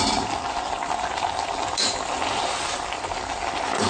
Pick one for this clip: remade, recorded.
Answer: recorded